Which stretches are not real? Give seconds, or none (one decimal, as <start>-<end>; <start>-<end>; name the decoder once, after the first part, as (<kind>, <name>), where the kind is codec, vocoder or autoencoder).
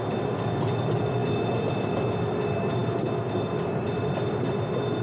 none